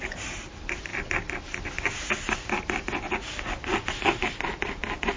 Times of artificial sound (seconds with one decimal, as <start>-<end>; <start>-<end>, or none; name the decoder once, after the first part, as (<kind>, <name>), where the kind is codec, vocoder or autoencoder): 0.0-0.9 (vocoder, BigVGAN v2); 4.0-5.2